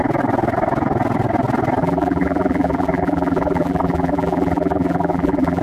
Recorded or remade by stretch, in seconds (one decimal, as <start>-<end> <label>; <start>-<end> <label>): 0.0-1.8 recorded; 1.8-5.6 remade